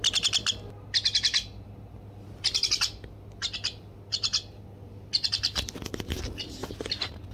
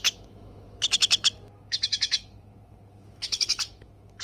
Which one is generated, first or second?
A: second